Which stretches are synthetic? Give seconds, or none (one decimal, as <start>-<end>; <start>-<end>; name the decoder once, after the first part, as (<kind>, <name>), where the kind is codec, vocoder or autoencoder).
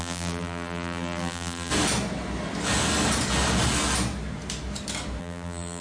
0.0-1.7 (vocoder, BigVGAN v2); 5.2-5.8